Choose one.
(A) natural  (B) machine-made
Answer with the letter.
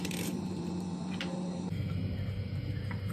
B